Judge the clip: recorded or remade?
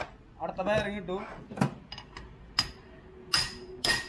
recorded